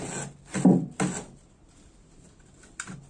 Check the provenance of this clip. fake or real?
real